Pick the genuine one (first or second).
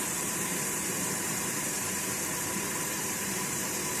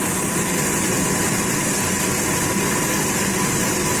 second